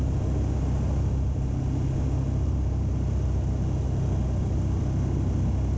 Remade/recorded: recorded